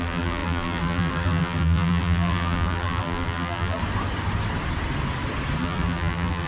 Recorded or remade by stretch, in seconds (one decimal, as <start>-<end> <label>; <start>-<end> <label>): 0.0-3.8 remade; 3.8-5.6 recorded; 5.6-6.5 remade